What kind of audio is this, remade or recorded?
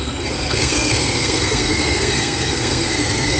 remade